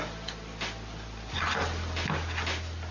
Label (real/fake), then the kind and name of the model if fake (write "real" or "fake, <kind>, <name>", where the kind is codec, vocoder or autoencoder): real